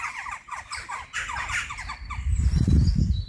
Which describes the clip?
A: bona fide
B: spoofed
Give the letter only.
B